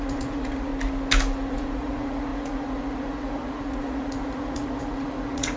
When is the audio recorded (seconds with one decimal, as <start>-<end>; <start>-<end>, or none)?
0.7-1.5